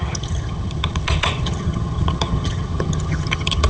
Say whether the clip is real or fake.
fake